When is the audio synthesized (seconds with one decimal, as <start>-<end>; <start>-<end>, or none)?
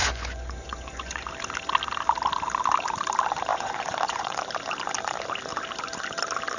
0.0-1.3; 3.5-4.4